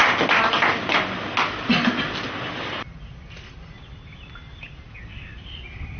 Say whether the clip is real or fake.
real